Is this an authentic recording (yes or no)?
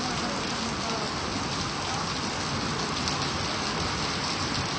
yes